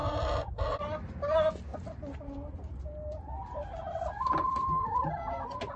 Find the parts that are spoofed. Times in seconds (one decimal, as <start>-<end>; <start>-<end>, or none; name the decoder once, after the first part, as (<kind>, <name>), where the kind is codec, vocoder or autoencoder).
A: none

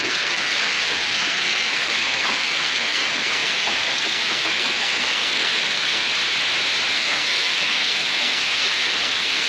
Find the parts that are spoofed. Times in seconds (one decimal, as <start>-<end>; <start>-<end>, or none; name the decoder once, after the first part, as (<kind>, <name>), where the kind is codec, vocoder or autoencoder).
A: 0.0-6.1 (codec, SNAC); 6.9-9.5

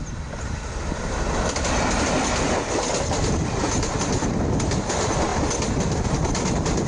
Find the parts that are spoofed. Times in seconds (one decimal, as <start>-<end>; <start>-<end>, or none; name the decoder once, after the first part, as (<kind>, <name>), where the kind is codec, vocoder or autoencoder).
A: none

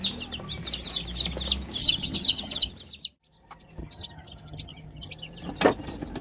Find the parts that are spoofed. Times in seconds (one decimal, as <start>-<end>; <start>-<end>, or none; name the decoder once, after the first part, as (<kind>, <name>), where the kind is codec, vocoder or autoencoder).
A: 1.8-2.7 (vocoder, HiFi-GAN); 3.8-5.1

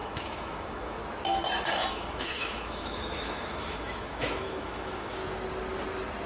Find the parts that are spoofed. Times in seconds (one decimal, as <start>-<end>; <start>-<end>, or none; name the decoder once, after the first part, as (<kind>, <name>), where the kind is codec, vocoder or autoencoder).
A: 0.0-1.0 (autoencoder, DAC-VAE); 1.9-5.2

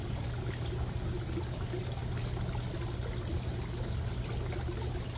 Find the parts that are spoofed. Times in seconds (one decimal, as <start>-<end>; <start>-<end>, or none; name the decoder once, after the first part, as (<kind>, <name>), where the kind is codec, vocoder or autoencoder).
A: none

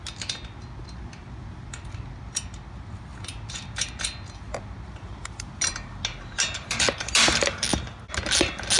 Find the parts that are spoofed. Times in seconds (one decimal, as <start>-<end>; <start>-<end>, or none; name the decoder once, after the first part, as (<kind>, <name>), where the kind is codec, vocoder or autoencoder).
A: none